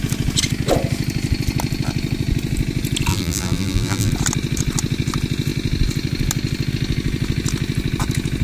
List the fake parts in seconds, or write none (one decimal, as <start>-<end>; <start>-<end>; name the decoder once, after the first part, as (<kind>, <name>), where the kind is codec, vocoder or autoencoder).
3.1-4.1 (vocoder, BigVGAN v2)